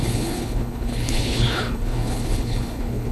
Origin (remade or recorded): remade